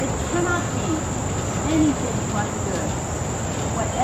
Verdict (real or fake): real